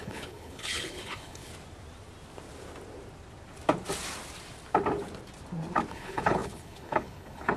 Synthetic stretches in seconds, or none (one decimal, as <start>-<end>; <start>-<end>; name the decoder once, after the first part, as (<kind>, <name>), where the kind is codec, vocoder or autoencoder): 0.0-1.5 (codec, HILCodec); 5.9-7.6